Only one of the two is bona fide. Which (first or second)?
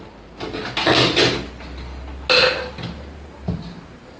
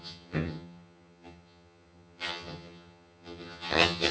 first